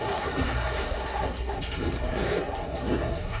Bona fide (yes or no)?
no